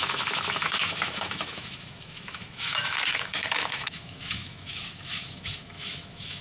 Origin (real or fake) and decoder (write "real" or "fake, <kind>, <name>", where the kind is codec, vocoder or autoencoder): fake, autoencoder, DAC-VAE